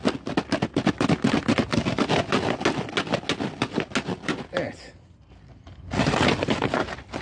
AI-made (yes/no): no